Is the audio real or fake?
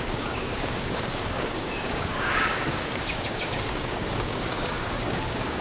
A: fake